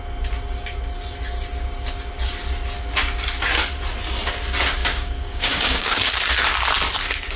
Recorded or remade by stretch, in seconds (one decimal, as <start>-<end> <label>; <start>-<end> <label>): 0.0-4.8 recorded; 4.8-6.1 remade; 6.1-7.4 recorded